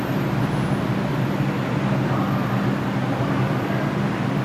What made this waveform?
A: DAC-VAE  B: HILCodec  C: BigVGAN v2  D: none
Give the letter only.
D